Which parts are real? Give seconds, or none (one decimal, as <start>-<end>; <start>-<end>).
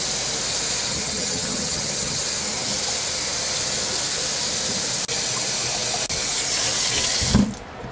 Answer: 0.0-0.9; 2.2-7.9